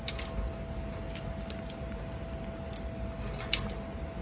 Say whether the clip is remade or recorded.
recorded